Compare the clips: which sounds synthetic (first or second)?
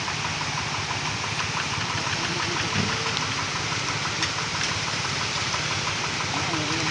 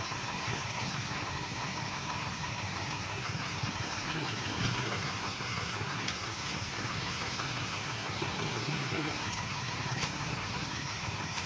second